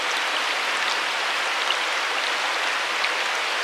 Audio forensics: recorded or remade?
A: recorded